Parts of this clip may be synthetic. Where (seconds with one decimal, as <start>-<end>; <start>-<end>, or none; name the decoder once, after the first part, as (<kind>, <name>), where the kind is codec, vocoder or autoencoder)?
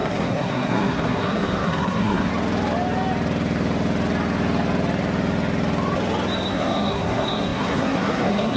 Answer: 0.0-2.3 (codec, SNAC); 6.5-8.6